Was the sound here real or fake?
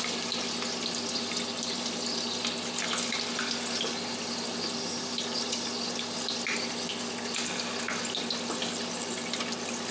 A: real